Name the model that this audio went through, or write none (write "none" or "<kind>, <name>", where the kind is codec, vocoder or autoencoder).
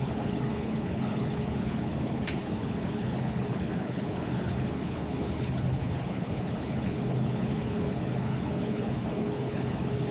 codec, HILCodec